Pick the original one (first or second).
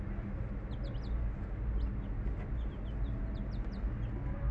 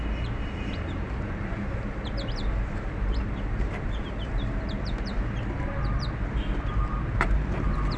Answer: first